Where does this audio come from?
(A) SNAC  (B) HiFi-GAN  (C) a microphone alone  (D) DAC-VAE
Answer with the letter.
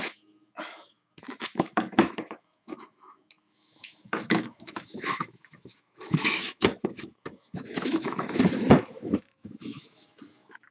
D